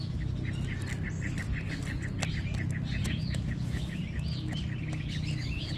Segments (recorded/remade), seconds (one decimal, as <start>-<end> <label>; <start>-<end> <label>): 0.0-3.0 recorded; 3.0-4.0 remade; 4.0-5.8 recorded